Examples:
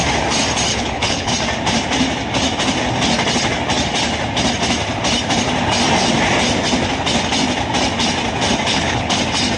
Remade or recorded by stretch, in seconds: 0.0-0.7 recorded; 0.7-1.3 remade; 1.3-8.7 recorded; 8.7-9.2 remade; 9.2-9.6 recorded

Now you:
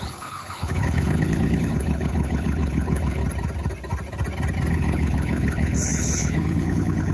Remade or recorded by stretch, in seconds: 0.0-3.2 remade; 3.2-4.7 recorded; 4.7-7.1 remade